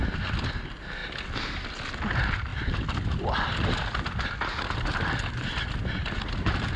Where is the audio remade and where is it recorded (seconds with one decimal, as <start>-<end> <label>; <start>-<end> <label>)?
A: 0.0-2.5 recorded; 2.5-5.3 remade; 5.3-6.8 recorded

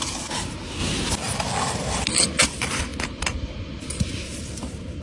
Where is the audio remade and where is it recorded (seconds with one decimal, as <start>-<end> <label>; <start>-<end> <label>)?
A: 0.0-0.8 remade; 0.8-2.4 recorded; 2.4-2.9 remade; 2.9-3.8 recorded; 3.8-5.0 remade

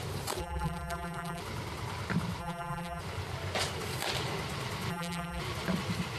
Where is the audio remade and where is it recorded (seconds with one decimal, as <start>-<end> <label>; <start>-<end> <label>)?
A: 0.0-0.4 recorded; 0.4-1.4 remade; 1.4-2.4 recorded; 2.4-3.0 remade; 3.0-4.9 recorded; 4.9-5.4 remade; 5.4-6.2 recorded

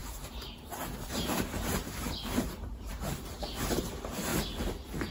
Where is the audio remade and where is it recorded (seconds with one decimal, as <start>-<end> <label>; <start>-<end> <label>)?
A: 0.0-4.3 remade; 4.3-5.1 recorded